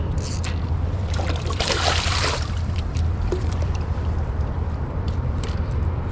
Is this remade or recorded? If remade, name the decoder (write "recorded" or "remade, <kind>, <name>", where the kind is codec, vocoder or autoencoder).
remade, vocoder, BigVGAN v2